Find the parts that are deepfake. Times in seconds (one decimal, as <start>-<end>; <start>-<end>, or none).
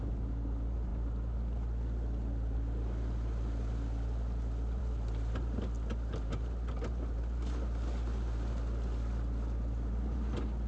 none